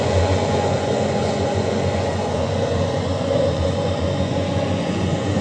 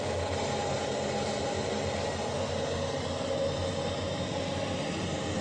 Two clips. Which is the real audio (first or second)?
second